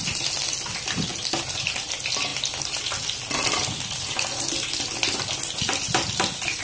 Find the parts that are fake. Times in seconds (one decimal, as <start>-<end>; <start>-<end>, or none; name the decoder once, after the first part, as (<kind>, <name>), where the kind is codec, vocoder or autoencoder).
none